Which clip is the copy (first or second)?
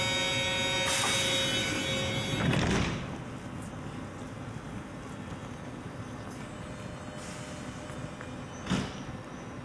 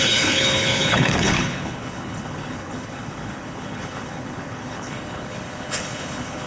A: second